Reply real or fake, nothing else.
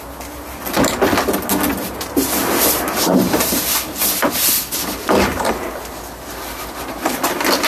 real